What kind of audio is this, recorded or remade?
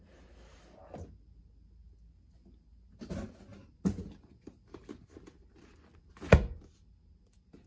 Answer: recorded